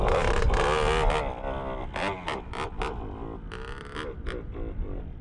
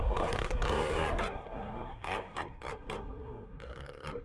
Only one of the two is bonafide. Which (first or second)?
first